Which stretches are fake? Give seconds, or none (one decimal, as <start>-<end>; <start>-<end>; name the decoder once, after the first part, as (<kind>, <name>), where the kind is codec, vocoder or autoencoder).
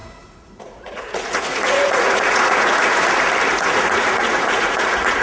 0.0-3.1 (vocoder, Vocos); 3.5-5.2